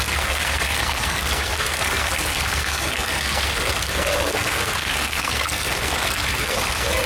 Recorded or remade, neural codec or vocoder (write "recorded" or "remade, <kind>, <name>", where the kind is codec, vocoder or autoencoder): remade, codec, SNAC